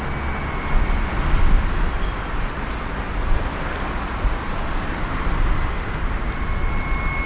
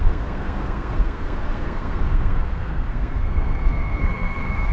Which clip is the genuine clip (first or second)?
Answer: first